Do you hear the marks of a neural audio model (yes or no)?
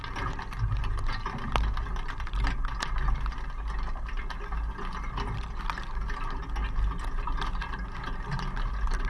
no